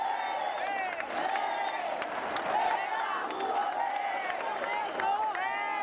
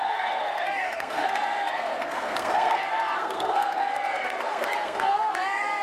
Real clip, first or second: first